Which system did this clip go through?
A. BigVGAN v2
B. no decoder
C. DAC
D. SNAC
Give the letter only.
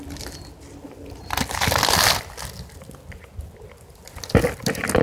B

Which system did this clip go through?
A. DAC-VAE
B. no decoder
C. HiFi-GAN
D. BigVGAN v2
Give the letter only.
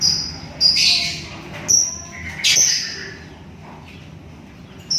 B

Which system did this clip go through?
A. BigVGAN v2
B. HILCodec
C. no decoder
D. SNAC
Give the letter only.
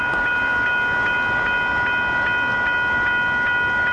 C